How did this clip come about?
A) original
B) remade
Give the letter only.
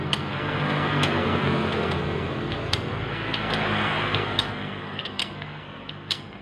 B